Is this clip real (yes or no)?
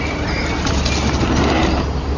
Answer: yes